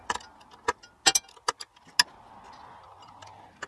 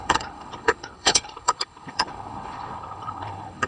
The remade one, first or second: second